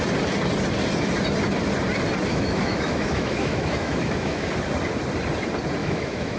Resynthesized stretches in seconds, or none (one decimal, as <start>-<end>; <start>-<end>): 2.3-4.5; 5.8-6.4